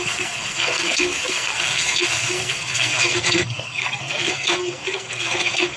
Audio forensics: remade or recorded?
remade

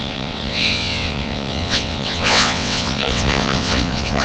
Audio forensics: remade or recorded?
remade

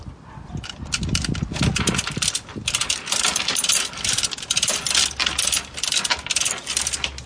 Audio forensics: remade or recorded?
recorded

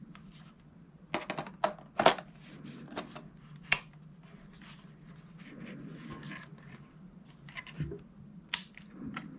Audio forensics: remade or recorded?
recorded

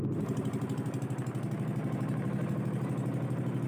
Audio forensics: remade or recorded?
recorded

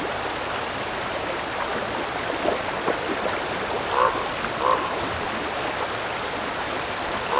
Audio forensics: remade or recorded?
recorded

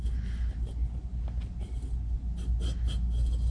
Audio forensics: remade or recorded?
recorded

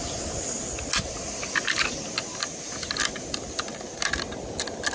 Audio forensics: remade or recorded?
recorded